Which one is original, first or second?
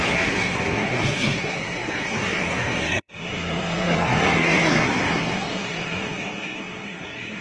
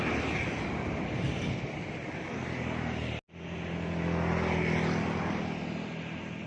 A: second